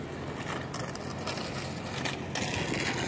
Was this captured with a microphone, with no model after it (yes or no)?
yes